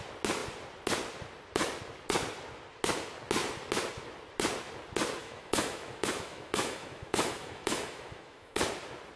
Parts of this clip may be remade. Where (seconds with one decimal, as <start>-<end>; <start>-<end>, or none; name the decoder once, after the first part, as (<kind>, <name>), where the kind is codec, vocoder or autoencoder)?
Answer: 5.2-8.6 (autoencoder, DAC-VAE)